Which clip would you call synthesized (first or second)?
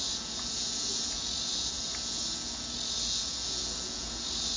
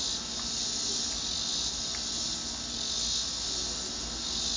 first